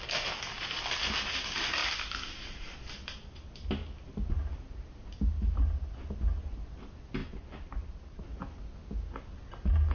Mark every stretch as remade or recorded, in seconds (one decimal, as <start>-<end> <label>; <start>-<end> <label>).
0.0-1.8 recorded; 1.8-2.7 remade; 2.7-7.2 recorded; 7.2-8.2 remade; 8.2-9.9 recorded